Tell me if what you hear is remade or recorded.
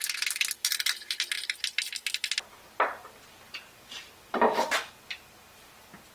recorded